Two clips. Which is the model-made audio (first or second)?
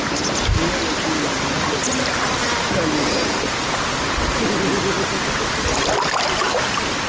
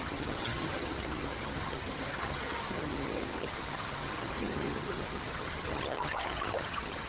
second